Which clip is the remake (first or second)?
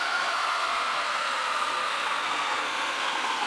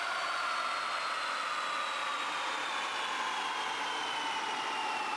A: first